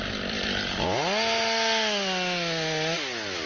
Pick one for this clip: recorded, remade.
recorded